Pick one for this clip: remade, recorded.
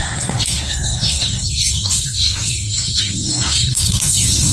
remade